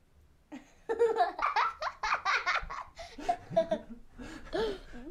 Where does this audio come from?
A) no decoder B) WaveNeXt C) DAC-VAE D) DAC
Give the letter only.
A